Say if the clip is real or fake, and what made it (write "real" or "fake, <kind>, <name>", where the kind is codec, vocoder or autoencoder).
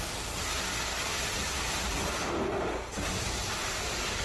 real